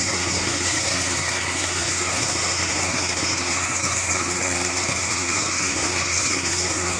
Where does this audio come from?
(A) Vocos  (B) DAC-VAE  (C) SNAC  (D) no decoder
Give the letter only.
C